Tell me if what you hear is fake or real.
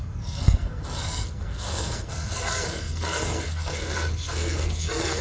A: fake